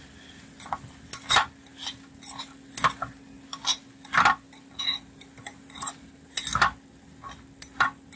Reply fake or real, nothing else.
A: real